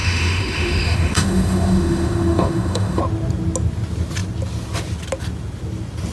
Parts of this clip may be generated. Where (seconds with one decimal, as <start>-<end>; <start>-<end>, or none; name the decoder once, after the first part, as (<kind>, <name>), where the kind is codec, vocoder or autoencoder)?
0.0-3.0 (autoencoder, DAC-VAE)